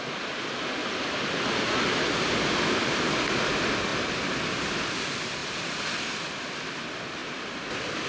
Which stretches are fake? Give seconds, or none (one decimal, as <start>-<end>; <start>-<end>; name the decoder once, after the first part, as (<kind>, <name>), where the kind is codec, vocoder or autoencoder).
5.4-6.4 (vocoder, BigVGAN v2); 7.2-8.1